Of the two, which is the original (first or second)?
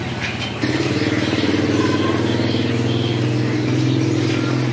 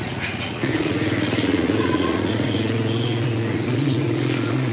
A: first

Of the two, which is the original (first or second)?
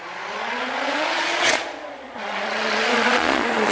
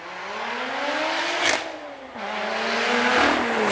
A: second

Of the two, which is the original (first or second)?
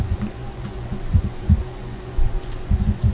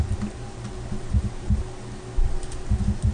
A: second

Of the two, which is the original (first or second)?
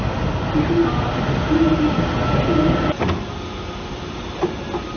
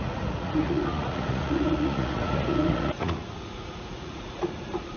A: first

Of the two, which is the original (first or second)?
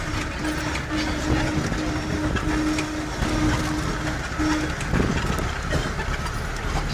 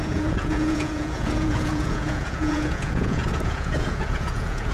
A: first